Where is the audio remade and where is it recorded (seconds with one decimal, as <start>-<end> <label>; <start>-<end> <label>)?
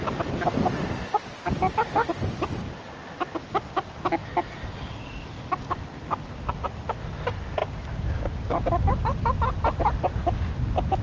0.0-11.0 recorded